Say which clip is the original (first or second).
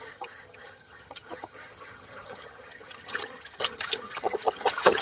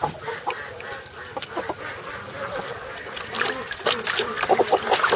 second